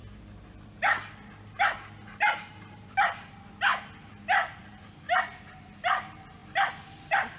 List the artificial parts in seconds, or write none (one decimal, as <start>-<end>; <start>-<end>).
none